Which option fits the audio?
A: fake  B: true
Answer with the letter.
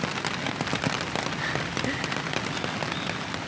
B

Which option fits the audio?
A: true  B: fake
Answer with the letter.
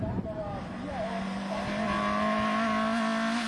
A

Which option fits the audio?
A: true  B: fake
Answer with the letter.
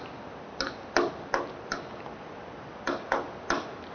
A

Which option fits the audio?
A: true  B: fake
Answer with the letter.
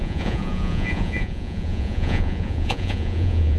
B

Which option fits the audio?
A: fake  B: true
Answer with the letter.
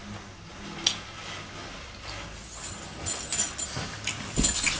B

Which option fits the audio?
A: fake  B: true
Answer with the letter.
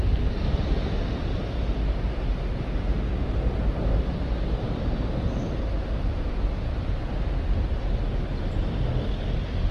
B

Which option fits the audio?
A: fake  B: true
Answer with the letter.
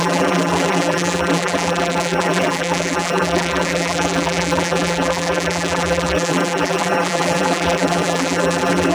A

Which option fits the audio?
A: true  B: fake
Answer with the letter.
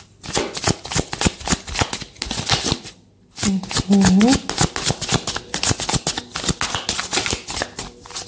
A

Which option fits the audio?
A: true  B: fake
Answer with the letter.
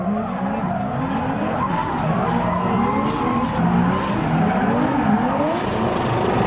A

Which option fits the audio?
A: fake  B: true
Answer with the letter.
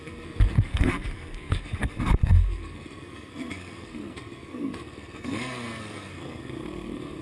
A